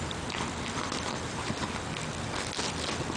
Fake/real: real